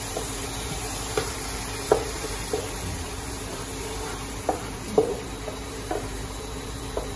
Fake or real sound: fake